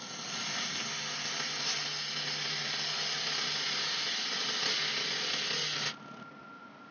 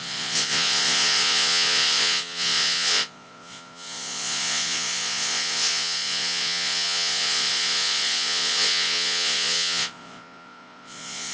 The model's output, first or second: second